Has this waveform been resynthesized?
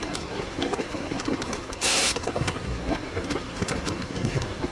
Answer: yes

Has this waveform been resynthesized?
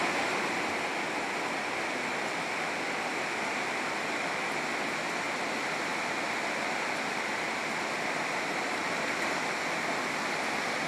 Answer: no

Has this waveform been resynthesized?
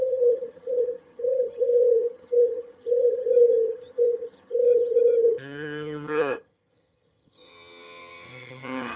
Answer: yes